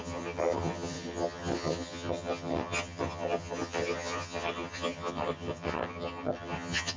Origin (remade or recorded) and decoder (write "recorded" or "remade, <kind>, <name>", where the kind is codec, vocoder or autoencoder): remade, vocoder, HiFi-GAN